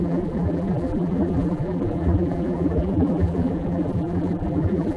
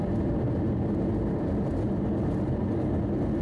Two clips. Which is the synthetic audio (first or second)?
first